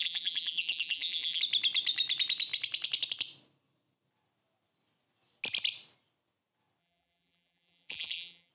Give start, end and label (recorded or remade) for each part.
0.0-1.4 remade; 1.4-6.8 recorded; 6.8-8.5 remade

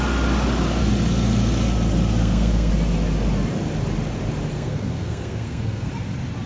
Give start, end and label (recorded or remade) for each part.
0.0-2.2 recorded; 2.2-2.7 remade; 2.7-4.5 recorded; 4.5-5.9 remade; 5.9-6.5 recorded

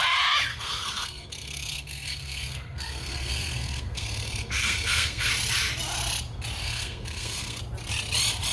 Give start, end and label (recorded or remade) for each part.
0.0-0.5 recorded; 0.5-5.3 remade; 5.3-6.6 recorded; 6.6-7.6 remade; 7.6-8.5 recorded